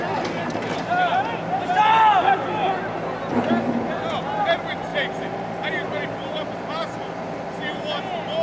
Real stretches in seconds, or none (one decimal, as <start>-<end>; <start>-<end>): 0.0-8.4